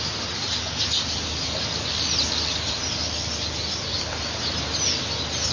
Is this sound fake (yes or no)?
no